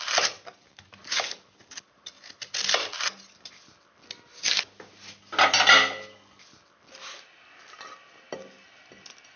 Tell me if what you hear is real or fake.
real